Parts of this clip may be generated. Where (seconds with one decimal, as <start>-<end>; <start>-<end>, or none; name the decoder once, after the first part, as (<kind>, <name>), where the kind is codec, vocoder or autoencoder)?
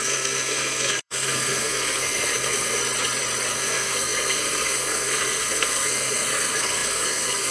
0.0-2.8 (codec, SNAC); 3.5-7.5